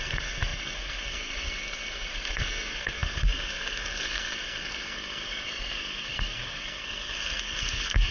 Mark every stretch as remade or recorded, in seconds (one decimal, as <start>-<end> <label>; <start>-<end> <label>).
0.0-8.1 remade